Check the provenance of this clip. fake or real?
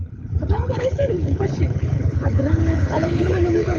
fake